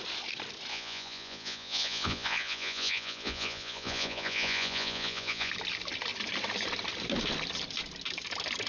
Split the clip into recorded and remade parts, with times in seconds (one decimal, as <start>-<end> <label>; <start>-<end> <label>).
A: 0.0-0.7 recorded; 0.7-5.5 remade; 5.5-8.7 recorded